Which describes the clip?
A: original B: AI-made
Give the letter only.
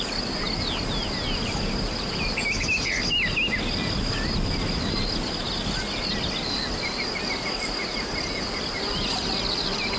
A